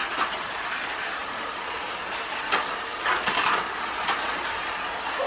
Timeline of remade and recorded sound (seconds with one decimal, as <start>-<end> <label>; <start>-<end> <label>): 0.0-0.6 remade; 0.6-1.2 recorded; 1.2-1.7 remade; 1.7-5.3 recorded